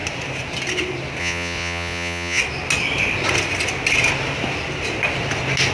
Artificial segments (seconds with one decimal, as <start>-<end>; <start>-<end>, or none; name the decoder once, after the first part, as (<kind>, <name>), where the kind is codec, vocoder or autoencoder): 1.2-2.4 (vocoder, Vocos)